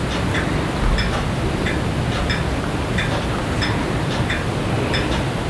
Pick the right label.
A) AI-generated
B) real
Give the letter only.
B